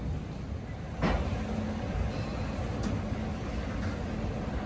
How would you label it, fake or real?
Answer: real